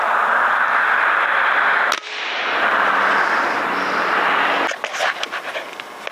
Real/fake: real